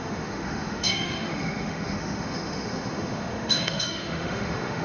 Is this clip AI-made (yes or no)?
yes